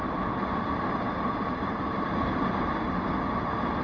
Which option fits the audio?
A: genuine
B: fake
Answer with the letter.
A